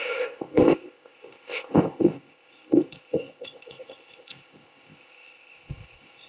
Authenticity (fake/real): fake